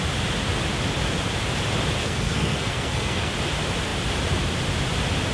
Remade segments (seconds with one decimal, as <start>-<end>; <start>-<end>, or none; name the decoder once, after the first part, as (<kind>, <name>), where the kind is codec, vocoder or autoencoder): 2.0-3.3 (codec, SNAC)